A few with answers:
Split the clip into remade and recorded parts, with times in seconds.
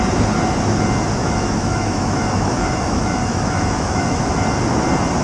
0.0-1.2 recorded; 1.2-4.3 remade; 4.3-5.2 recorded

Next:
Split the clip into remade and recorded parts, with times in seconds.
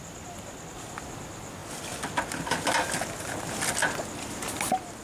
0.0-5.0 recorded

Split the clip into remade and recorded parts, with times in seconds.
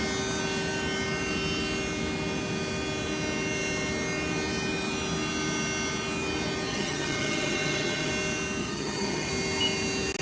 0.0-6.7 recorded; 6.7-8.1 remade; 8.1-8.6 recorded; 8.6-9.3 remade; 9.3-10.2 recorded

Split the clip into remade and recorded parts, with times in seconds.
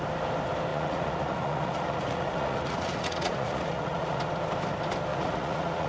0.0-0.7 recorded; 0.7-4.2 remade; 4.2-5.1 recorded; 5.1-5.9 remade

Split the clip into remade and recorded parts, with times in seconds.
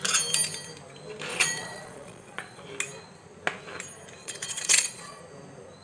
0.0-1.3 recorded; 1.3-2.6 remade; 2.6-4.2 recorded; 4.2-5.2 remade; 5.2-5.8 recorded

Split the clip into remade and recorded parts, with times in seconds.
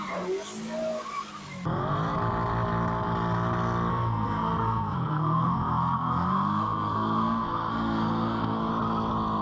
0.0-3.9 recorded; 3.9-8.7 remade; 8.7-9.4 recorded